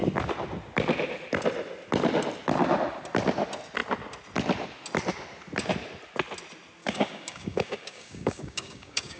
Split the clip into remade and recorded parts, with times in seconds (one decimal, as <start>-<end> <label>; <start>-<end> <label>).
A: 0.0-6.8 recorded; 6.8-9.2 remade